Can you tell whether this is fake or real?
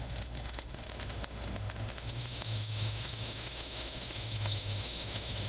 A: fake